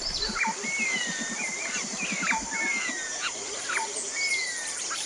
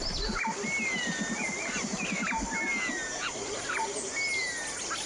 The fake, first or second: first